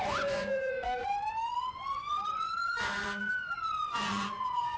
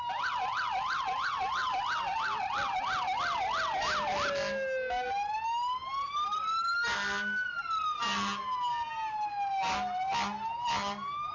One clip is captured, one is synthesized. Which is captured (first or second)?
second